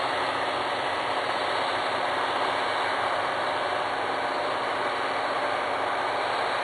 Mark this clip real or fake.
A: real